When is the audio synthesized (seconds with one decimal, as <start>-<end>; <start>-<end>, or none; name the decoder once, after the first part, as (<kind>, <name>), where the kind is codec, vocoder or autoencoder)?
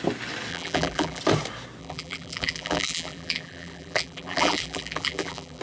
0.5-1.2 (vocoder, BigVGAN v2); 1.8-5.6